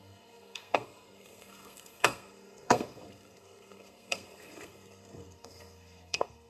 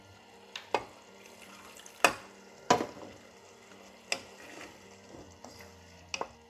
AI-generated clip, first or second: first